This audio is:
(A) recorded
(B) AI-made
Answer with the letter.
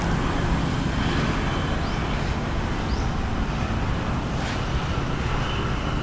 A